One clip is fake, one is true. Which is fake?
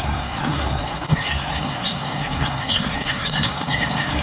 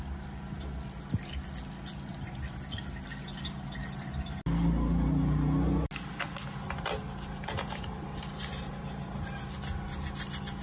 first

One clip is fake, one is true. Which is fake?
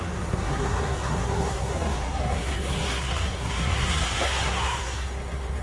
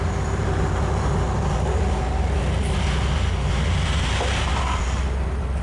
first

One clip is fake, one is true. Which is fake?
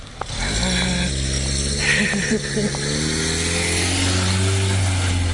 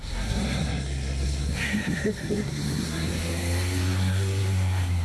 second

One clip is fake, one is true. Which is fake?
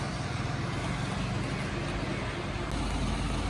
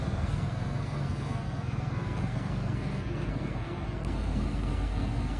second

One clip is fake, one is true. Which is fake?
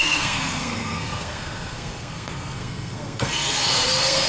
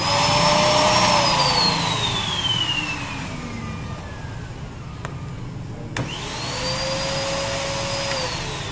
first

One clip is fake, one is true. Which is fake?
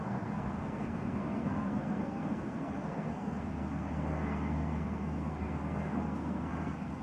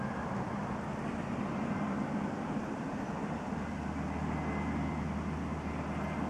first